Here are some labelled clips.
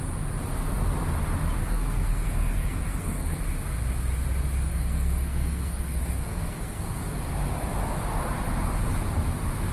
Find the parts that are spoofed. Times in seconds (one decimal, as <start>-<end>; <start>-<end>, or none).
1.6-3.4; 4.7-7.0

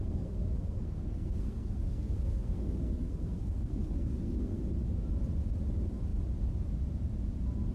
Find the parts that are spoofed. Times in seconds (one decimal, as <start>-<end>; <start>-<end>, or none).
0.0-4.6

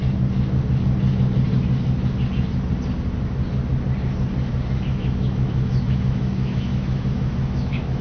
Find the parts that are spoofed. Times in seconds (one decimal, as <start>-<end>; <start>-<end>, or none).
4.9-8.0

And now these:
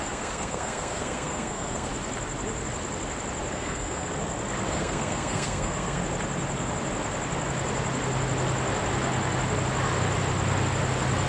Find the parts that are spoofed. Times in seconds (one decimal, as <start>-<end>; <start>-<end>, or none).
0.0-1.9; 3.5-4.1; 4.7-6.0

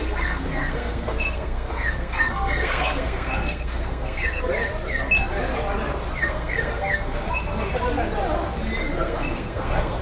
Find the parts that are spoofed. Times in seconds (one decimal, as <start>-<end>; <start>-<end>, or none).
0.0-4.5; 6.2-7.7; 8.8-10.0

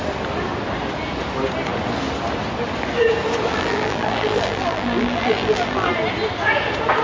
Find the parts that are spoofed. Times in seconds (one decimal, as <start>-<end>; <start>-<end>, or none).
3.5-5.9